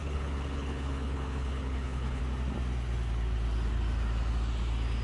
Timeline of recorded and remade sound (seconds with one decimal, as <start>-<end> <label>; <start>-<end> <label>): 0.0-2.2 remade; 2.2-5.0 recorded